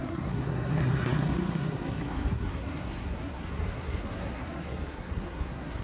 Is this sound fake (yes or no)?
yes